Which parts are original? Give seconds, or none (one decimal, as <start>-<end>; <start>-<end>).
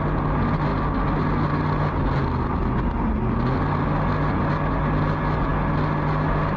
0.0-6.6